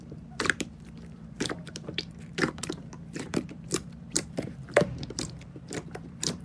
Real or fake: fake